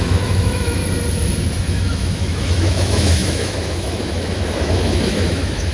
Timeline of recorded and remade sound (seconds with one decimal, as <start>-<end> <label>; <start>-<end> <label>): 0.0-0.8 remade; 0.8-1.6 recorded; 1.6-5.7 remade